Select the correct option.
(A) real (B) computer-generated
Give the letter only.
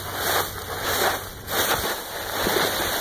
A